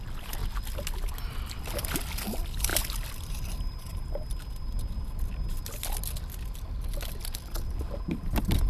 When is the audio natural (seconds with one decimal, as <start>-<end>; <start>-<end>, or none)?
0.0-8.7